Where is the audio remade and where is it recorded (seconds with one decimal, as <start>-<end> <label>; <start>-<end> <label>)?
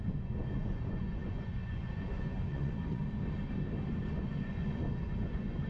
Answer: 0.0-3.0 remade; 3.0-4.2 recorded; 4.2-5.7 remade